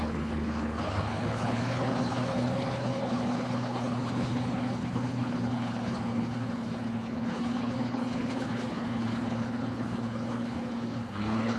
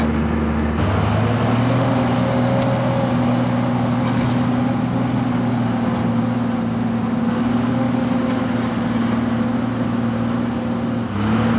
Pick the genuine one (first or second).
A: second